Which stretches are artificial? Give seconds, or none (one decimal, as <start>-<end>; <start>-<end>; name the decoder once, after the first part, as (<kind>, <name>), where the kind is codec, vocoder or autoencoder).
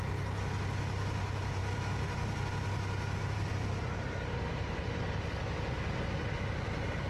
1.6-2.4 (vocoder, BigVGAN v2); 3.2-5.4